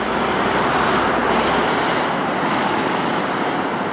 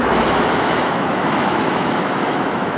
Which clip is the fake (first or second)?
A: second